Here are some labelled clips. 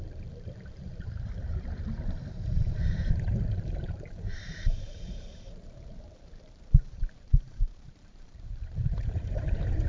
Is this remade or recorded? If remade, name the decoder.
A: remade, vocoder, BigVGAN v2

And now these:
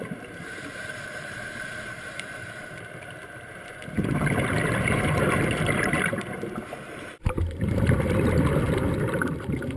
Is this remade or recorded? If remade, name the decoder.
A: remade, vocoder, BigVGAN v2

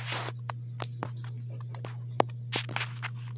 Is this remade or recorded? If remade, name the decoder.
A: recorded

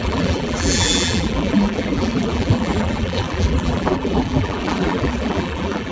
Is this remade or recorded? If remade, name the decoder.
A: remade, vocoder, BigVGAN v2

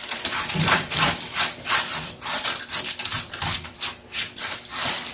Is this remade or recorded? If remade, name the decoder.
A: remade, vocoder, BigVGAN v2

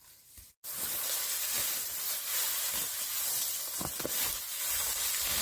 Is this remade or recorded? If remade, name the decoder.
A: recorded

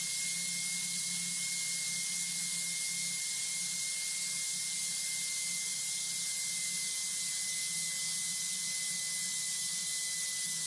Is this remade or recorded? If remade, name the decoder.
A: recorded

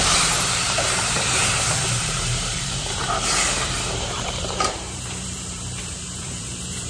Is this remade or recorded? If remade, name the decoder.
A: remade, vocoder, BigVGAN v2